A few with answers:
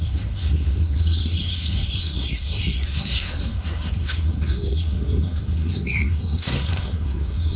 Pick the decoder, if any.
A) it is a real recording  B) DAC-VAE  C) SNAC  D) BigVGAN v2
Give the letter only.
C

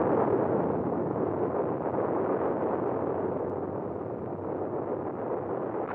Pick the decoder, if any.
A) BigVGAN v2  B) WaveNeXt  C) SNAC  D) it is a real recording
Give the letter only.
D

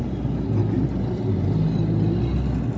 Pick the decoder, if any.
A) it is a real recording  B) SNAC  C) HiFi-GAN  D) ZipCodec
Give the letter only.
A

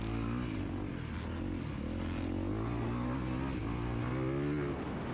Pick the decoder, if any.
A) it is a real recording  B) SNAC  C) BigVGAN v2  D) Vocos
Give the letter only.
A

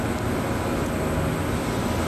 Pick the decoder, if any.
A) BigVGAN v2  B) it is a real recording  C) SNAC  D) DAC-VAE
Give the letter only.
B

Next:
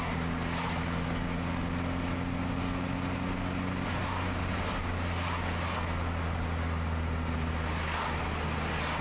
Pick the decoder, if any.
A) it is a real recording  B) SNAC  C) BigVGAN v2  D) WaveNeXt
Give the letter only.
A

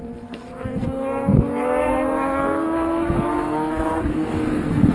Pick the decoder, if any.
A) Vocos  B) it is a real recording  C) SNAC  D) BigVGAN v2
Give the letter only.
C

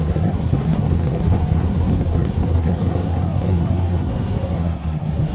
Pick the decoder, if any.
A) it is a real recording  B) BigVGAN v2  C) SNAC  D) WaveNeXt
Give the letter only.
C